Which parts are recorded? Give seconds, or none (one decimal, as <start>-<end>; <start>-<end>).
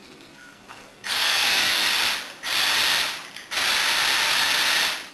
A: 1.8-5.1